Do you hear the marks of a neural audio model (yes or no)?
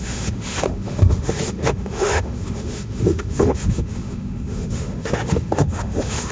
yes